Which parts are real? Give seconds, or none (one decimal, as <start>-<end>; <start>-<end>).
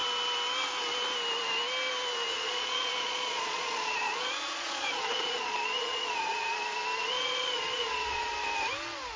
0.0-2.3; 6.6-7.0; 8.3-9.2